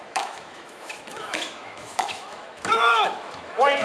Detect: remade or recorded remade